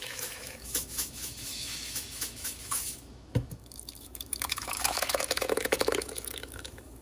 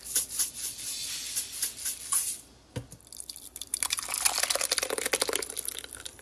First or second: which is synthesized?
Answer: first